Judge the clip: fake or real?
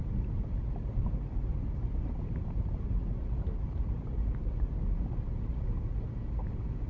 real